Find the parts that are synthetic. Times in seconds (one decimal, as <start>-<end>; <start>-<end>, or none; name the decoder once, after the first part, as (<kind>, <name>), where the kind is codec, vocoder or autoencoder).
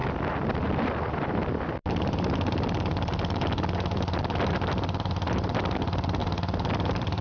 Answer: 0.7-1.8 (vocoder, BigVGAN v2); 4.5-6.2; 6.7-7.2